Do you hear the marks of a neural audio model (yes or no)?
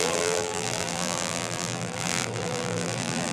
yes